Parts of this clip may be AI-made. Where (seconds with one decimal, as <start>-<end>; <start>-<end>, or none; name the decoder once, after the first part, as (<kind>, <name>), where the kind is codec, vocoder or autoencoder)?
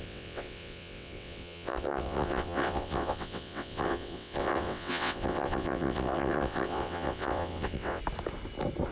0.0-8.0 (vocoder, WaveNeXt)